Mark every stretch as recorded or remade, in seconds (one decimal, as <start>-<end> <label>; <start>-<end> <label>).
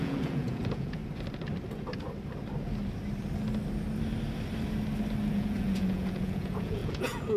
0.0-1.0 remade; 1.0-5.3 recorded; 5.3-7.4 remade